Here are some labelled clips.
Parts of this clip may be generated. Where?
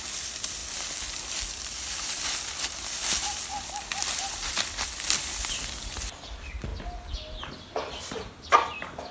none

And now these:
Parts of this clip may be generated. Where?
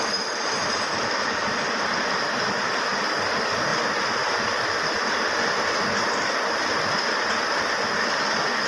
none